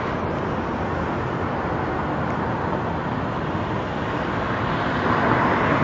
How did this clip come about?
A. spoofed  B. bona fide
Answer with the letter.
B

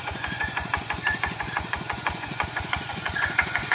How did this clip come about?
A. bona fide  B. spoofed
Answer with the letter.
B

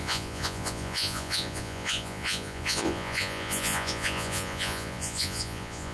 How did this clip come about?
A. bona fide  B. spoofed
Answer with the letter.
B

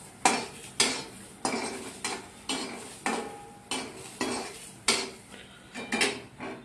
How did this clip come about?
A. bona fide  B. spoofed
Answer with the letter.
A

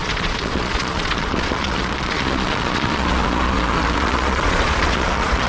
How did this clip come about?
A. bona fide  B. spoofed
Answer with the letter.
B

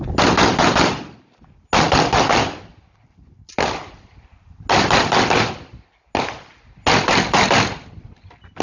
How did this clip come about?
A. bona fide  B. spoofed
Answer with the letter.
A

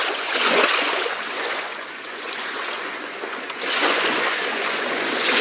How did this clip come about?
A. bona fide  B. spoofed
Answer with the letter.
B